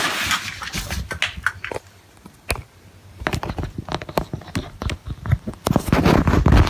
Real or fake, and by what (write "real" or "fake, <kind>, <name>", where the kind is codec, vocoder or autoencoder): real